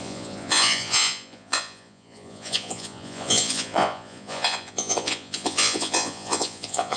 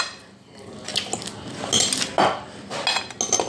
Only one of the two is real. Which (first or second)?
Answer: second